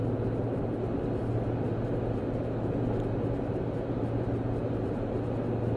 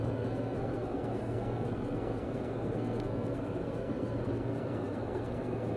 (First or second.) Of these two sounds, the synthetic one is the second